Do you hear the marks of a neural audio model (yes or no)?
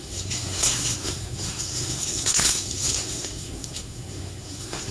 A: yes